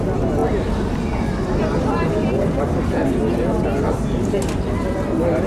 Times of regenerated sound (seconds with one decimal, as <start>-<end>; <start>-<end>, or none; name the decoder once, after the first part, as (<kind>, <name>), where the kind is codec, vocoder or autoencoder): none

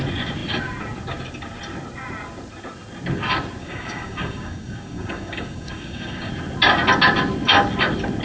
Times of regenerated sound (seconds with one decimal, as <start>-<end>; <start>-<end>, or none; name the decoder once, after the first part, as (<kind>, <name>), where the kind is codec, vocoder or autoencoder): 3.6-6.3 (codec, DAC)

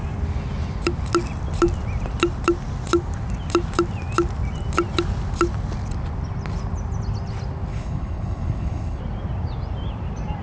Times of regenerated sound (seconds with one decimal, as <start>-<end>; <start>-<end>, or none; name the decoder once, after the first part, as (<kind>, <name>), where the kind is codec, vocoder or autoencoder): 7.7-9.0 (codec, HILCodec)

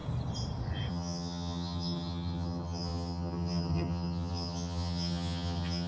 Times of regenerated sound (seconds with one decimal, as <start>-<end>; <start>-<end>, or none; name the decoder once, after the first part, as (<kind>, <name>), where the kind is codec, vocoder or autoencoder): 0.9-5.9 (vocoder, HiFi-GAN)

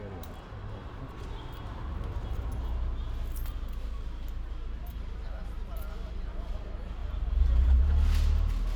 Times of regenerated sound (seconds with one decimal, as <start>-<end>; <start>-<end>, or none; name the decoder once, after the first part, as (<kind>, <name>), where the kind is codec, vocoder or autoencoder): 0.8-2.1 (vocoder, BigVGAN v2); 7.0-7.8